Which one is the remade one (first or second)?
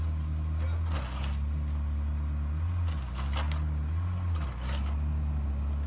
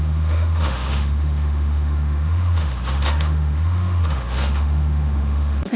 second